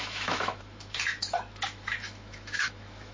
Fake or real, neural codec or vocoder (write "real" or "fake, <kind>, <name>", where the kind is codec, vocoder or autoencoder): fake, autoencoder, DAC-VAE